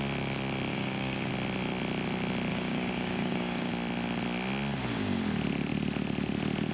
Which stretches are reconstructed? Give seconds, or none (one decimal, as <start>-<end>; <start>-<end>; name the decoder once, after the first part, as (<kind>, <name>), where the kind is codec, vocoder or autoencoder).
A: 0.7-1.3 (codec, DAC); 2.5-3.7